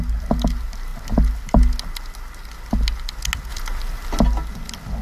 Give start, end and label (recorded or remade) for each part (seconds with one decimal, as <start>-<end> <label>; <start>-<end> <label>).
0.0-5.0 recorded